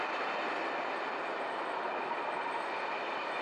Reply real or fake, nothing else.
real